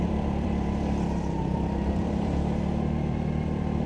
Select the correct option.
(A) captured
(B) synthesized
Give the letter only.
B